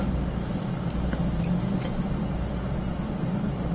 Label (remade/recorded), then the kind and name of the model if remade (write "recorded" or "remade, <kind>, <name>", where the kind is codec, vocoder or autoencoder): recorded